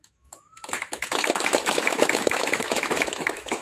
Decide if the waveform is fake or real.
fake